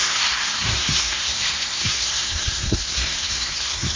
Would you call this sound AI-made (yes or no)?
yes